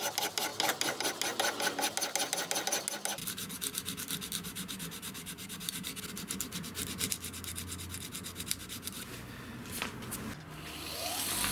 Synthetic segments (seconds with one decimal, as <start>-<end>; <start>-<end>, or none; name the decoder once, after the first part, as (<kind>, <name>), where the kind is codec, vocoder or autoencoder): none